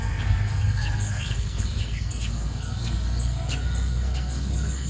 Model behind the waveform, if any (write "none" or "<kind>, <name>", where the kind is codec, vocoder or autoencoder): codec, SNAC